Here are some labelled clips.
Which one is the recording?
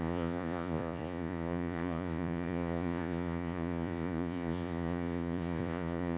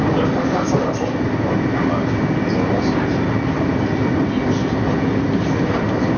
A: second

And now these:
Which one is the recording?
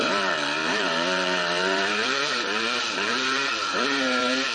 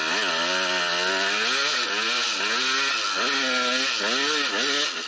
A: second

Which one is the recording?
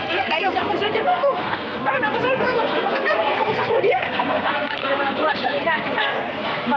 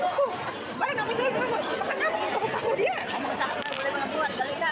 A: second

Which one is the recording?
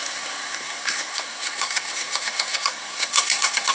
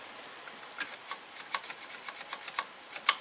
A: second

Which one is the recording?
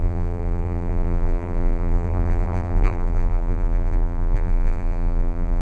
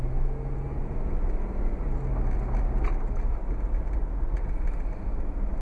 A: second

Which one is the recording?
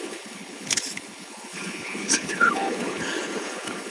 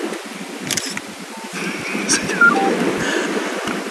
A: second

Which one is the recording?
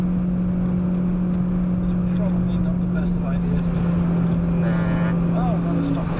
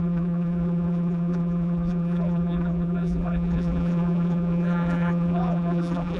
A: first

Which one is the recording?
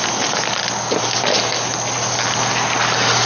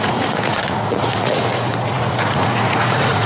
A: first